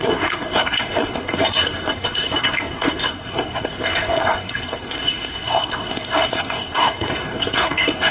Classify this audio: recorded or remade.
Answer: remade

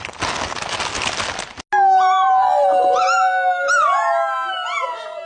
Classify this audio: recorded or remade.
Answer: recorded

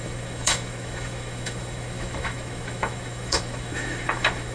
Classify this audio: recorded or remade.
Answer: remade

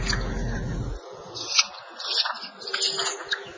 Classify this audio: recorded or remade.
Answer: recorded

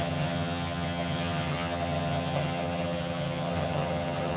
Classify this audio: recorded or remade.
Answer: remade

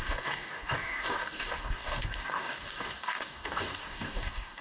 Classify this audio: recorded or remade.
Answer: remade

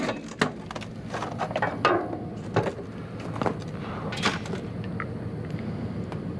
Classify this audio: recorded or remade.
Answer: recorded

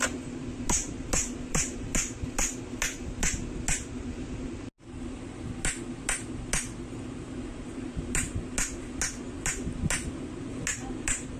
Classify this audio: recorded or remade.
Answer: recorded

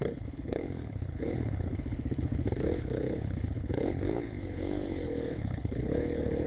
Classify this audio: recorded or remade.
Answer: remade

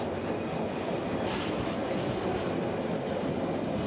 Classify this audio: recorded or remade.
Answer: recorded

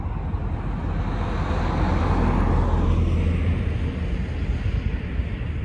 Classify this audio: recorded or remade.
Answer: recorded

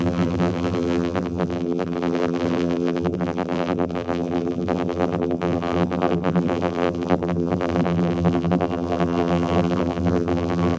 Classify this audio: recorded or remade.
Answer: remade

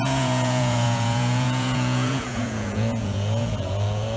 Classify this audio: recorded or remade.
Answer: remade